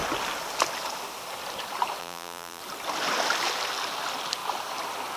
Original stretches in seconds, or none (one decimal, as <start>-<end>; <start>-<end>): 0.0-2.0; 2.6-5.2